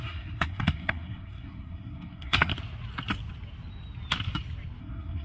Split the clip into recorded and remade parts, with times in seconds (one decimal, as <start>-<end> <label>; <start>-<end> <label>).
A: 0.0-2.5 remade; 2.5-4.8 recorded; 4.8-5.2 remade